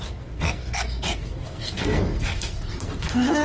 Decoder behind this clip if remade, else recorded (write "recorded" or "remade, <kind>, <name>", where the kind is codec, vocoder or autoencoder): remade, codec, SNAC